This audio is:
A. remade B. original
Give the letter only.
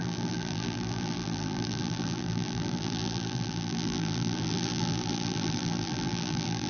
A